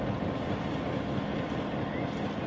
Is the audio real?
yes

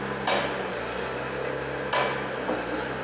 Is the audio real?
yes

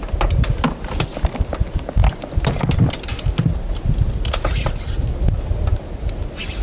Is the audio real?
yes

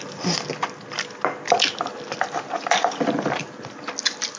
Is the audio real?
yes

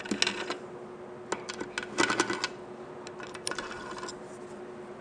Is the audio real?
yes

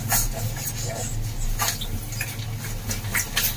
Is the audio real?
yes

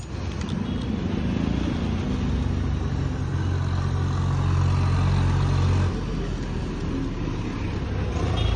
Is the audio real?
yes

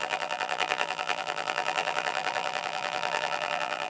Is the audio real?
no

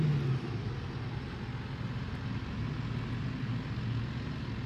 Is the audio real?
yes